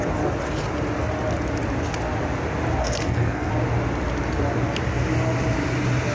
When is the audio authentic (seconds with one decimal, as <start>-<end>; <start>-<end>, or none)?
0.0-2.8; 3.5-6.1